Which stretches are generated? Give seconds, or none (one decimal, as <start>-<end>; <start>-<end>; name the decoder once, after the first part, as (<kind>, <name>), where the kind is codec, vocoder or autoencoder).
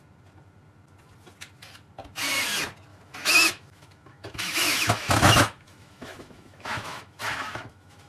2.9-8.1 (autoencoder, DAC-VAE)